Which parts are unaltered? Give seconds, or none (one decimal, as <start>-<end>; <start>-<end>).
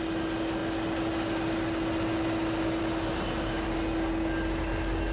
0.0-5.1